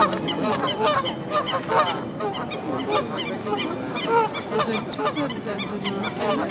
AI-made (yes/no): no